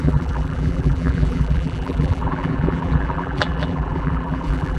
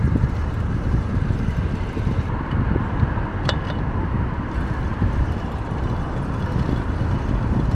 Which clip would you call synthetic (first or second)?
first